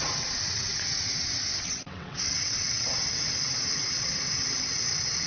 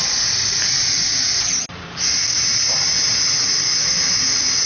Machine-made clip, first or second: first